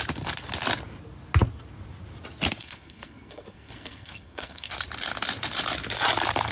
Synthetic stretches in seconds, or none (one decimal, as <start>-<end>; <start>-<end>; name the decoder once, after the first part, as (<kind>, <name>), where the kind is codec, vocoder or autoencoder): 2.6-4.7 (codec, SNAC)